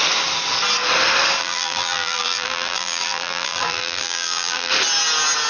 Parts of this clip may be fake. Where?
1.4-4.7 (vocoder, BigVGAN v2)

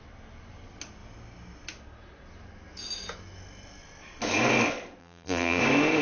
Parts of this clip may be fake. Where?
5.0-5.6 (vocoder, BigVGAN v2)

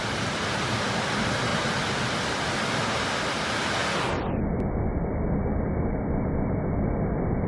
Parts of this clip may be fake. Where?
none

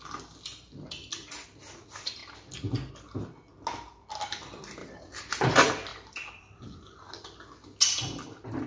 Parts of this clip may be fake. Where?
4.8-5.3 (vocoder, BigVGAN v2); 5.9-7.0

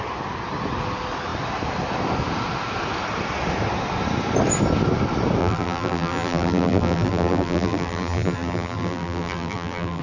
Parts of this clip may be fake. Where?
5.4-10.0 (vocoder, BigVGAN v2)

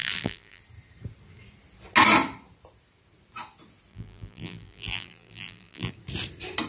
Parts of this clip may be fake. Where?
0.0-0.6 (vocoder, BigVGAN v2); 3.9-5.9